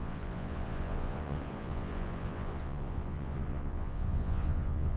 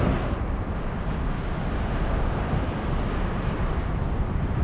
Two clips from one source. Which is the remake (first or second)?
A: first